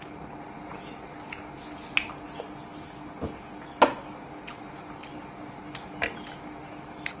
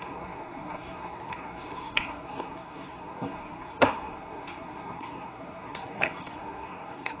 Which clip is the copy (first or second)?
second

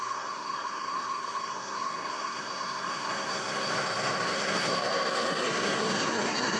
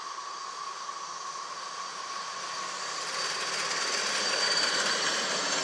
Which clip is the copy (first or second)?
first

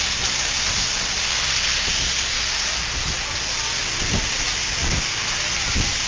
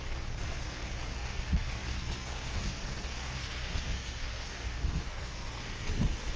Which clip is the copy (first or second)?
second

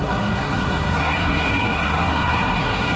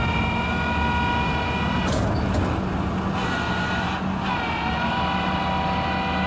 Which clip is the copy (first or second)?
first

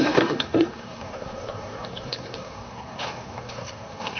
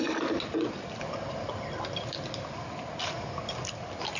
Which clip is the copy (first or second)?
first